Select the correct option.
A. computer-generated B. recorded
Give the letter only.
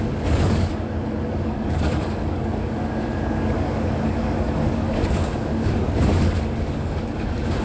A